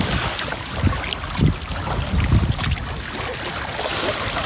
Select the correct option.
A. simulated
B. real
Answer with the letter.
B